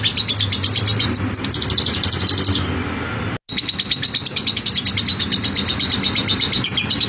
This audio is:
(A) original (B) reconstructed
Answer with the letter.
A